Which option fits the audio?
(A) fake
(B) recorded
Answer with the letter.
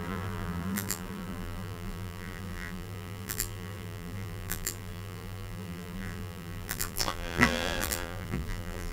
A